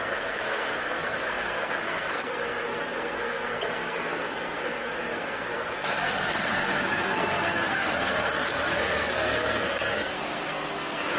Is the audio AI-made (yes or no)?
yes